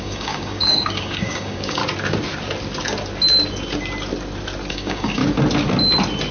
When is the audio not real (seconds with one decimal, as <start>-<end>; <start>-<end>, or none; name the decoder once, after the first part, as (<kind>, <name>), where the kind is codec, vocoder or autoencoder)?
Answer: 0.0-1.8 (codec, DAC); 4.7-5.2